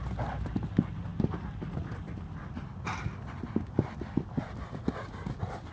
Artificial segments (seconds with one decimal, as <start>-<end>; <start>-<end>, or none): none